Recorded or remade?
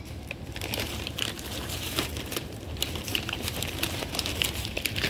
remade